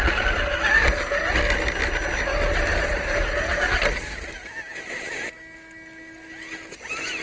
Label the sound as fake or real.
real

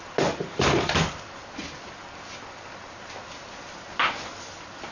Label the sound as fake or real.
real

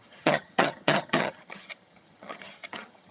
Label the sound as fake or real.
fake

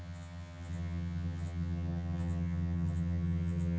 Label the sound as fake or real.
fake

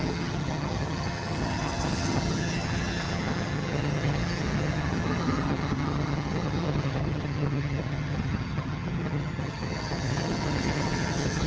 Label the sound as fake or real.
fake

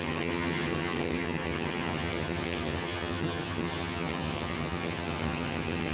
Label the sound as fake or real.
fake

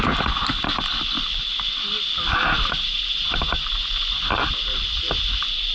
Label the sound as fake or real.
real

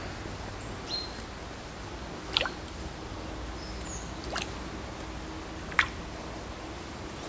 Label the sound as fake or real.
real